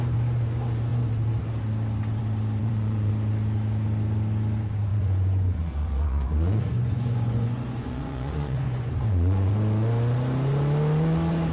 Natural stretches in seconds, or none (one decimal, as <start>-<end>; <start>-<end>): 0.0-2.6; 3.1-4.9; 9.5-11.5